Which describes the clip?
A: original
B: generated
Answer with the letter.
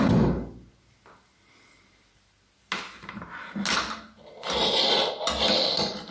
A